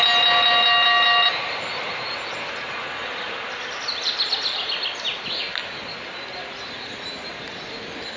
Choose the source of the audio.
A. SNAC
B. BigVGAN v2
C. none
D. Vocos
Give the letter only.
C